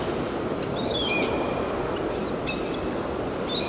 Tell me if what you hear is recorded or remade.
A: recorded